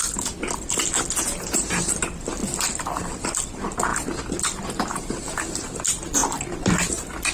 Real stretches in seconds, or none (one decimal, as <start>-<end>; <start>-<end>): 2.4-3.0; 3.9-4.8